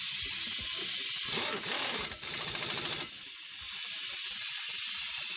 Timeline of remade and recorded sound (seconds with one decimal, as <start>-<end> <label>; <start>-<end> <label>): 0.0-5.4 recorded

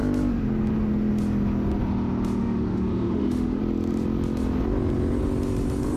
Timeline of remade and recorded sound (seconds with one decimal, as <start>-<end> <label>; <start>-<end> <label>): 0.0-2.4 recorded; 2.4-3.6 remade; 3.6-6.0 recorded

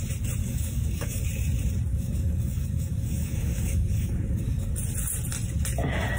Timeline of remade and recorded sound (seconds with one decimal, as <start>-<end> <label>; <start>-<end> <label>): 0.0-0.4 recorded; 0.4-1.2 remade; 1.2-1.9 recorded; 1.9-4.7 remade; 4.7-6.2 recorded

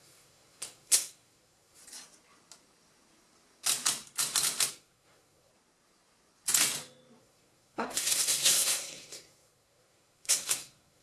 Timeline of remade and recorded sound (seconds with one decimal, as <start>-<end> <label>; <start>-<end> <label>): 0.0-1.8 remade; 1.8-4.7 recorded; 4.7-5.5 remade; 5.5-7.2 recorded; 7.2-11.0 remade

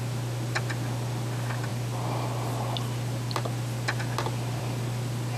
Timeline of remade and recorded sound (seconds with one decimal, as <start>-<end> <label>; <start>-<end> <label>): 0.0-5.4 recorded

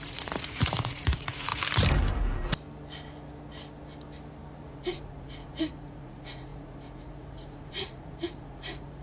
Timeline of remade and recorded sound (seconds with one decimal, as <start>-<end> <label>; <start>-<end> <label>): 0.0-1.5 remade; 1.5-4.7 recorded; 4.7-9.0 remade

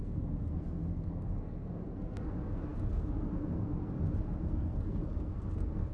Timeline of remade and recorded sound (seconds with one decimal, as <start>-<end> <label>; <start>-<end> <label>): 0.0-5.9 remade